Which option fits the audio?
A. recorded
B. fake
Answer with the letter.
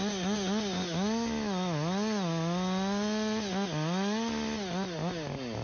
A